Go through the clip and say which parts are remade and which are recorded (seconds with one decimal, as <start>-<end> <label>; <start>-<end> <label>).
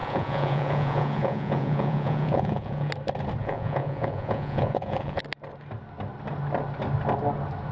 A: 0.0-2.9 remade; 2.9-3.4 recorded; 3.4-5.2 remade; 5.2-7.7 recorded